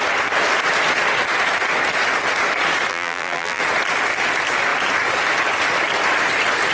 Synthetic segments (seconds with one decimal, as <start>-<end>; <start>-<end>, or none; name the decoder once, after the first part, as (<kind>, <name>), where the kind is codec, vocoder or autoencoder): 2.9-3.6 (vocoder, BigVGAN v2)